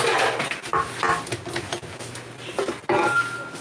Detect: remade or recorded recorded